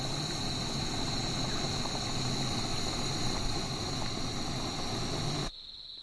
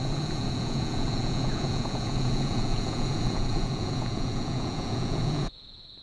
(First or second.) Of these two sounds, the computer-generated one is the second